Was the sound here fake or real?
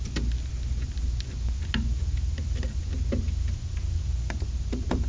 real